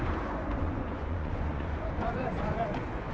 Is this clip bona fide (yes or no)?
no